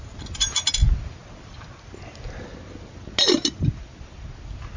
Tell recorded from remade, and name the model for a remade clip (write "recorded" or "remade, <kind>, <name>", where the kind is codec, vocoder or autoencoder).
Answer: recorded